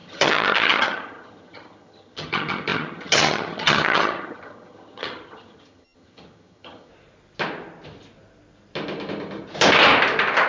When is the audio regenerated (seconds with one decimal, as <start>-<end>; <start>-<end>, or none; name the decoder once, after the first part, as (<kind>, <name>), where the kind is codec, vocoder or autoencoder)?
0.0-6.9 (vocoder, HiFi-GAN)